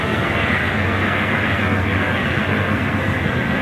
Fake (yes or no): yes